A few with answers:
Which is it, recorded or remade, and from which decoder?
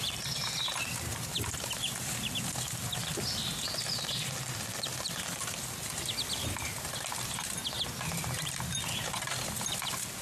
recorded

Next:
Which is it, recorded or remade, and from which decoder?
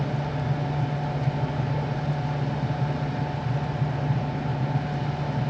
recorded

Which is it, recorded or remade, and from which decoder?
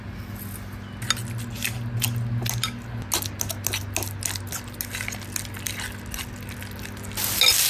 recorded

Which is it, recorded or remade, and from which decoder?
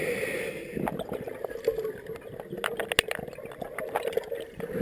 recorded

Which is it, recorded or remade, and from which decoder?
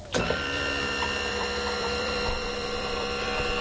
remade, vocoder, BigVGAN v2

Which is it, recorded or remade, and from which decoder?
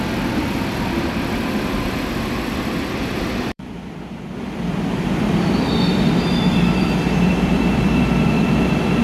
remade, vocoder, BigVGAN v2